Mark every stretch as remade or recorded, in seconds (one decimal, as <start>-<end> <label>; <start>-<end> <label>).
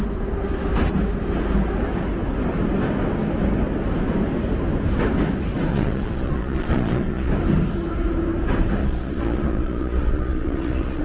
0.0-5.7 recorded; 5.7-7.3 remade; 7.3-8.8 recorded; 8.8-11.0 remade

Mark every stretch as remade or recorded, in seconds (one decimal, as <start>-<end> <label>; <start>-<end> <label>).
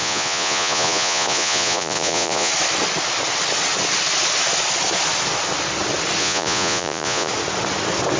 0.0-2.5 remade; 2.5-6.2 recorded; 6.2-7.3 remade; 7.3-8.2 recorded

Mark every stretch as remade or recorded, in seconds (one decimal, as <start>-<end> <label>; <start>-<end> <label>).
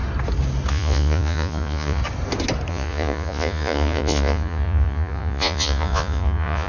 0.0-0.7 recorded; 0.7-2.0 remade; 2.0-2.7 recorded; 2.7-6.7 remade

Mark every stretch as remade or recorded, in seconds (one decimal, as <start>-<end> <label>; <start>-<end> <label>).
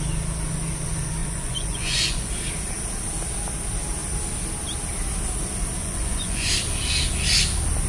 0.0-1.2 recorded; 1.2-2.3 remade; 2.3-5.8 recorded; 5.8-6.5 remade; 6.5-7.9 recorded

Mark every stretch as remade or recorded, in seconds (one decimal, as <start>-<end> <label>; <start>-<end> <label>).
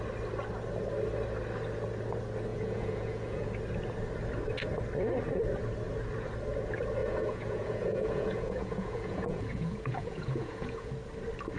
0.0-2.5 recorded; 2.5-3.5 remade; 3.5-7.0 recorded; 7.0-10.9 remade; 10.9-11.6 recorded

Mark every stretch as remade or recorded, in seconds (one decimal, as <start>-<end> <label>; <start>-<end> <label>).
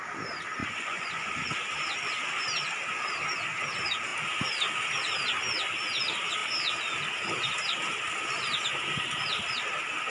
0.0-0.6 recorded; 0.6-1.3 remade; 1.3-10.1 recorded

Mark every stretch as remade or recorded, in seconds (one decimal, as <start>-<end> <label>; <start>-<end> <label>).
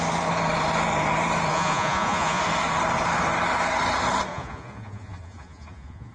0.0-1.5 recorded; 1.5-2.4 remade; 2.4-4.3 recorded; 4.3-6.1 remade